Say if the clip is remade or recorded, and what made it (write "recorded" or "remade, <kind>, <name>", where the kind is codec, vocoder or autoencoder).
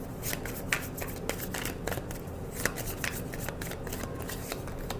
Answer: recorded